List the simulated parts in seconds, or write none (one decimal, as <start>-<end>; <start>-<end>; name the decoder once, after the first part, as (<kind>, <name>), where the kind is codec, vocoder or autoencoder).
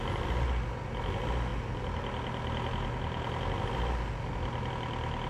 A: none